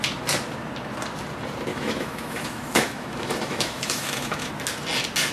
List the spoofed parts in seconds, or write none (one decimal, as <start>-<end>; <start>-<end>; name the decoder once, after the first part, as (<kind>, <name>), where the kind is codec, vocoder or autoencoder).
1.7-4.5 (autoencoder, DAC-VAE)